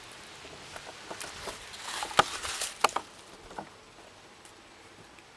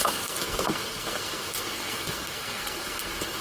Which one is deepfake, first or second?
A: second